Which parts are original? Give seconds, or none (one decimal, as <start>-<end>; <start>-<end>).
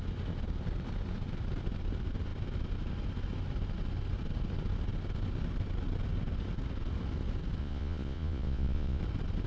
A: 0.0-7.6; 9.0-9.5